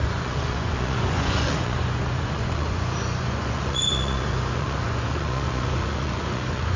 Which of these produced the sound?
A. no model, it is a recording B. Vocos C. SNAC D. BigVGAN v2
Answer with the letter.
B